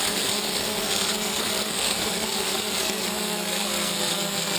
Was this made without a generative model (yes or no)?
no